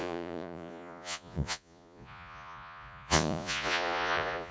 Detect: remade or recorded remade